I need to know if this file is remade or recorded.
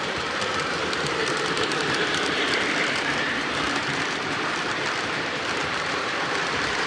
remade